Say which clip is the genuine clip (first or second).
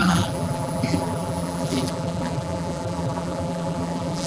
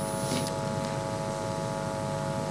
second